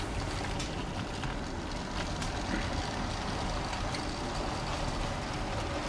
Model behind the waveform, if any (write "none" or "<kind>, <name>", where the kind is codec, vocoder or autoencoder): none